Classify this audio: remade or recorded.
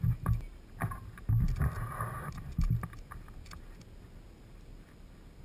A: recorded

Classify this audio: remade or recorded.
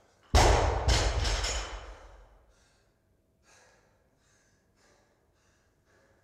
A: recorded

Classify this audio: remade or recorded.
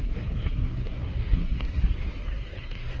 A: remade